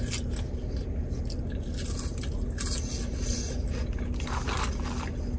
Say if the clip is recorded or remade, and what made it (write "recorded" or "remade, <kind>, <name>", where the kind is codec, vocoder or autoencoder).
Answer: recorded